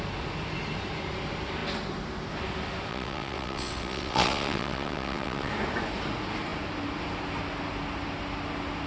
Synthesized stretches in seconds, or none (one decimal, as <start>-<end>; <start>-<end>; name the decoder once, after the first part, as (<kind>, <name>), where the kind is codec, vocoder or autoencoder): 2.9-5.5 (vocoder, WaveNeXt)

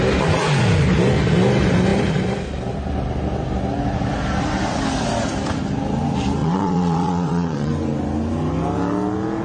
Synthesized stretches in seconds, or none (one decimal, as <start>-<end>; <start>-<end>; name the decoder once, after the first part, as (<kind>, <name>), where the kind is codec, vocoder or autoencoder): 6.4-7.7 (vocoder, WaveNeXt)

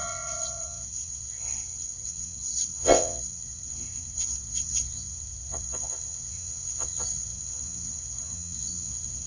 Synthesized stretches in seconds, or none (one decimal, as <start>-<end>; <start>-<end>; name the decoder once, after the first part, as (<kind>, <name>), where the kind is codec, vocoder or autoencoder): 0.0-9.3 (vocoder, WaveNeXt)